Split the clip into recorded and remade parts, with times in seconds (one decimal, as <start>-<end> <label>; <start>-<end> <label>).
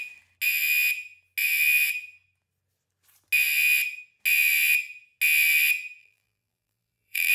0.0-6.0 recorded; 6.0-7.3 remade